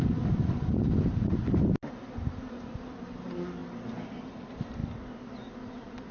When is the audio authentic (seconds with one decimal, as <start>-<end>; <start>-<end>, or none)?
0.0-6.1